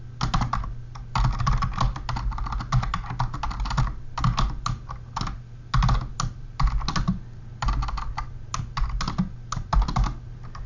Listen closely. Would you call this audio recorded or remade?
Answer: recorded